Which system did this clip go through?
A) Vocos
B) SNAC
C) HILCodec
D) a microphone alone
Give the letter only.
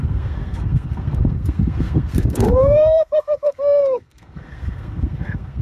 B